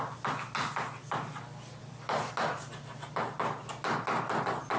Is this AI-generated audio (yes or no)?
no